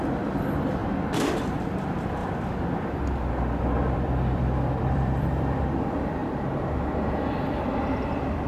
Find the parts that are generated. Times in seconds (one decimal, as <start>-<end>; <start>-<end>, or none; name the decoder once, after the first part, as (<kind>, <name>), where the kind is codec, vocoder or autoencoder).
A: 0.0-0.8 (vocoder, BigVGAN v2); 1.4-6.2; 7.9-8.5